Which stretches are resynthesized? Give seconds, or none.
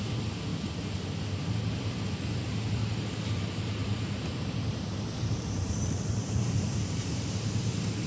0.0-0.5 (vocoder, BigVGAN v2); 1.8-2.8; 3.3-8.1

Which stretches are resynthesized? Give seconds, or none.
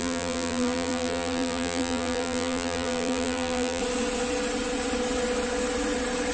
0.0-3.8 (vocoder, BigVGAN v2)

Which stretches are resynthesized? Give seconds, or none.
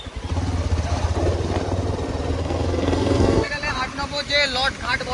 2.4-3.5 (codec, SNAC)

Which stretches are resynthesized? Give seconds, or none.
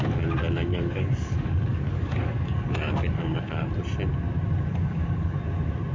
0.7-3.7 (codec, DAC); 4.7-5.4